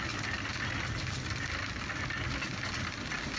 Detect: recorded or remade recorded